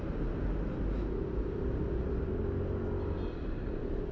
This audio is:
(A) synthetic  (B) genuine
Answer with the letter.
B